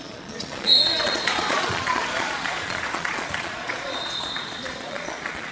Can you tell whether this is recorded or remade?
remade